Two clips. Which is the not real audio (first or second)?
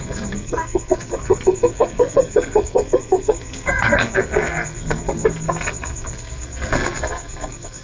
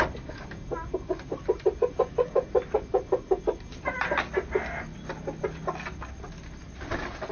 first